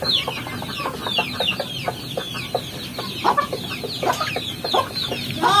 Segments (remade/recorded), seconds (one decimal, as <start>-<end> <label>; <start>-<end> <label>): 0.0-5.6 recorded